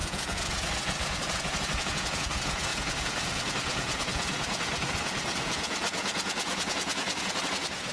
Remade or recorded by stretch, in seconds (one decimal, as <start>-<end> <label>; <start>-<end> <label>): 0.0-7.9 remade